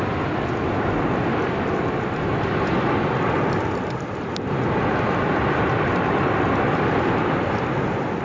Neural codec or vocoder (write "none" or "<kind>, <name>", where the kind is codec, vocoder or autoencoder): none